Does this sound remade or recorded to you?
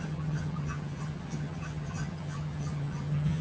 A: remade